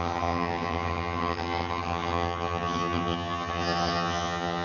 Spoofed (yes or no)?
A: yes